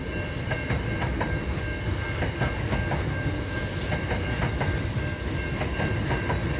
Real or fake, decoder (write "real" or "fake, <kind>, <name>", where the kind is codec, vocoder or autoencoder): real